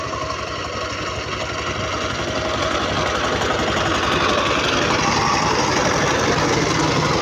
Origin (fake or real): real